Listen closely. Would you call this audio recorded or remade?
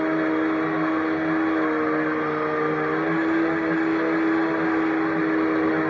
recorded